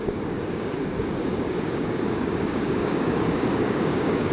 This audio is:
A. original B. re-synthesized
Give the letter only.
B